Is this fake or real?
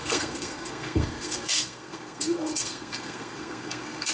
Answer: fake